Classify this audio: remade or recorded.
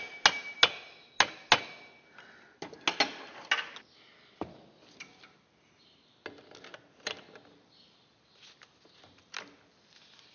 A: recorded